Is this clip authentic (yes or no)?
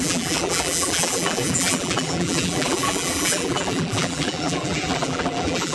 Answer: no